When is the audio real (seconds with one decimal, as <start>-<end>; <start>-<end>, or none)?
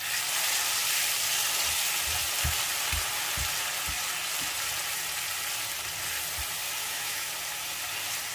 0.0-6.8; 7.3-8.3